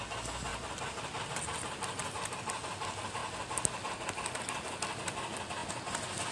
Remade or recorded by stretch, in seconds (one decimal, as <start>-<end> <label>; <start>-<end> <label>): 0.0-0.5 recorded; 0.5-2.4 remade; 2.4-6.3 recorded